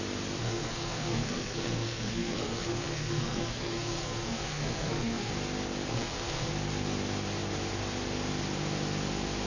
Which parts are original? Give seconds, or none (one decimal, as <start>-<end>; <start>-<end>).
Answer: 0.0-0.4; 5.3-5.9; 6.5-9.5